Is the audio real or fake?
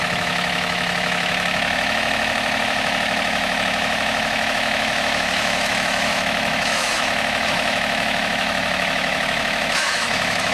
fake